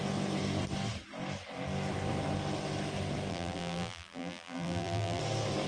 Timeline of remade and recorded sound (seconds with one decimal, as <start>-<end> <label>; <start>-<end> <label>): 0.0-3.3 recorded; 3.3-5.2 remade; 5.2-5.7 recorded